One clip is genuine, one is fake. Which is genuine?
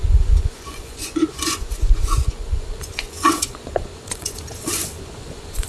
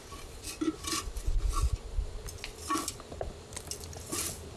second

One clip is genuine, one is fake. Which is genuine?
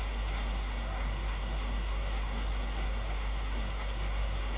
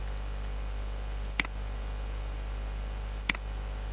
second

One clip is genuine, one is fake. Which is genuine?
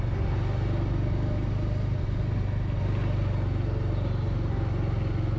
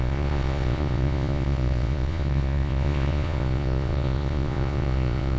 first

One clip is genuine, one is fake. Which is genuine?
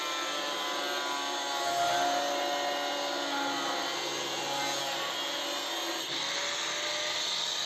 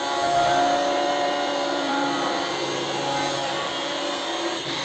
first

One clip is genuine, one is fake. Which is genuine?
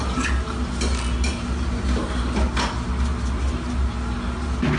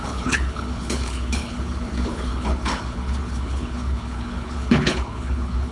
first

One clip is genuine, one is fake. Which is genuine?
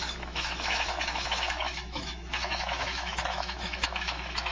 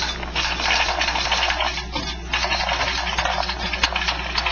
second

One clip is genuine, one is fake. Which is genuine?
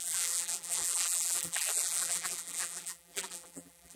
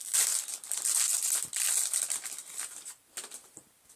second